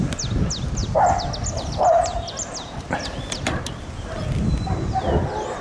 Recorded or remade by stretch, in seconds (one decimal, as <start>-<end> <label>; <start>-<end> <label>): 0.0-0.8 recorded; 0.8-3.9 remade; 3.9-5.6 recorded